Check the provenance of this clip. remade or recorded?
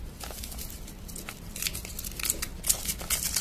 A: recorded